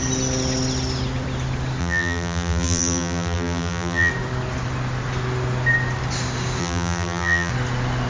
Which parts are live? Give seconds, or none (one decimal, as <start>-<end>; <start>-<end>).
0.0-1.8; 4.1-6.6; 7.5-8.1